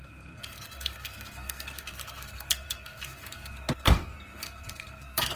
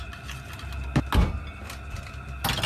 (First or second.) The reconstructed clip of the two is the first